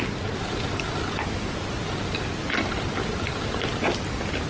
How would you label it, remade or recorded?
recorded